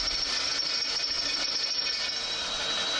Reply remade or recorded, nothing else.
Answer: recorded